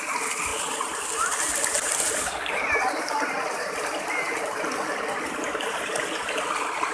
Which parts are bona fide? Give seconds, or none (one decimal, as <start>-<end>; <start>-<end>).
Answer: 0.0-0.5; 1.1-1.8; 5.9-6.9

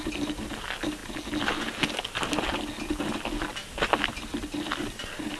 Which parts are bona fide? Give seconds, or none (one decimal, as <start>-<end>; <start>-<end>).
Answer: 1.0-4.2

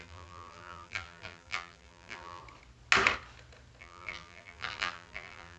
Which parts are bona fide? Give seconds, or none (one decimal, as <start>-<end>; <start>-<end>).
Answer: 2.4-3.8

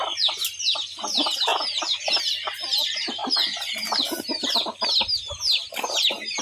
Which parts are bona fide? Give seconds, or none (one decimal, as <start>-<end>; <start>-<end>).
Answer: 0.0-6.4

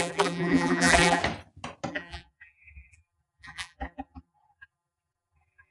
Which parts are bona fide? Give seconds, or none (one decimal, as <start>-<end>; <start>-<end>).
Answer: 1.2-1.9